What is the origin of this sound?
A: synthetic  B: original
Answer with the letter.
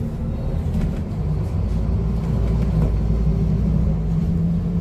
B